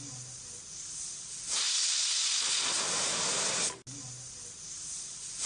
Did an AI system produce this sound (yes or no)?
no